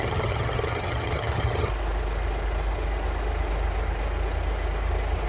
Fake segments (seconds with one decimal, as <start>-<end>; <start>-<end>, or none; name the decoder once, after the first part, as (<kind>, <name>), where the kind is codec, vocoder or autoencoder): 0.0-1.7 (vocoder, HiFi-GAN)